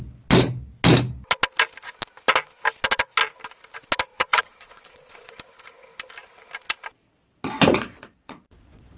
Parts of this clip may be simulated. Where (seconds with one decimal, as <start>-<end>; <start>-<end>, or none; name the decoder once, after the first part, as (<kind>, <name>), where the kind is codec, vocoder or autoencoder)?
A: 4.1-5.3 (vocoder, Vocos); 7.7-9.0